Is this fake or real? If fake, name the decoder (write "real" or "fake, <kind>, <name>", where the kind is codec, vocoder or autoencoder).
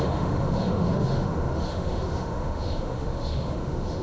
fake, autoencoder, DAC-VAE